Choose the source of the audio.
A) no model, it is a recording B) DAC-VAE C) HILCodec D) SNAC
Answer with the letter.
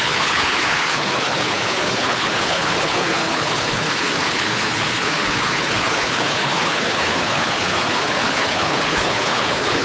C